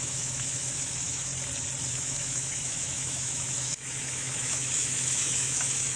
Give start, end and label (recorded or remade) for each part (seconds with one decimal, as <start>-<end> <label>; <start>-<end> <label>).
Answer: 0.0-1.3 remade; 1.3-1.9 recorded; 1.9-6.0 remade